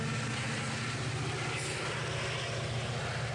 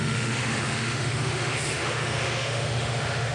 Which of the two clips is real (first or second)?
first